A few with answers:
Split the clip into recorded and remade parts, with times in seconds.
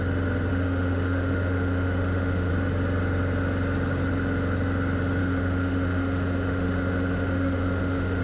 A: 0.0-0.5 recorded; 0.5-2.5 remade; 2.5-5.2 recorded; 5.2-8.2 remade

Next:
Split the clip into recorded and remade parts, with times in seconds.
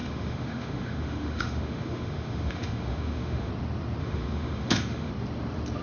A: 0.0-3.5 remade; 3.5-4.0 recorded; 4.0-5.1 remade; 5.1-5.8 recorded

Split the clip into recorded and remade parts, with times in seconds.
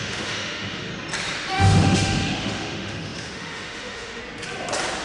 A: 0.0-0.9 remade; 0.9-1.5 recorded; 1.5-4.2 remade; 4.2-5.0 recorded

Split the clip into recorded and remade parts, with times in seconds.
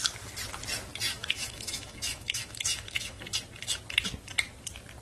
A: 0.0-1.1 recorded; 1.1-3.2 remade; 3.2-5.0 recorded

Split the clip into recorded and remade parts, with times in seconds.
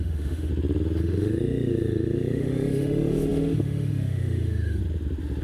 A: 0.0-0.5 remade; 0.5-1.0 recorded; 1.0-4.8 remade; 4.8-5.4 recorded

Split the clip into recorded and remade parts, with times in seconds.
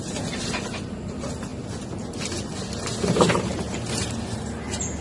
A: 0.0-5.0 recorded